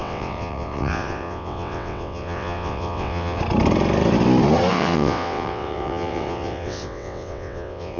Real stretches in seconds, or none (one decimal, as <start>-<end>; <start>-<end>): 3.4-4.7